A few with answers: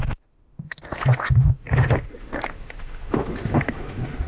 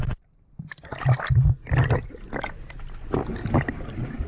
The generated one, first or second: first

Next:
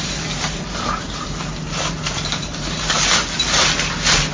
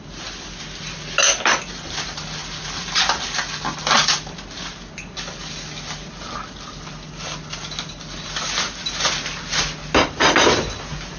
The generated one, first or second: first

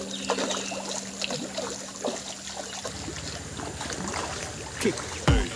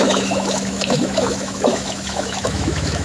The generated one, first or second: second